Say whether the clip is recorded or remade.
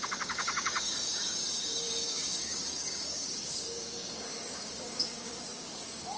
remade